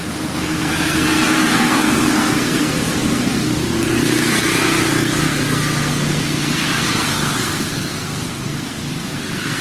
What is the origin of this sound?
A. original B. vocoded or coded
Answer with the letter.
B